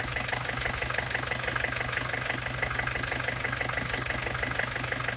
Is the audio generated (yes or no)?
no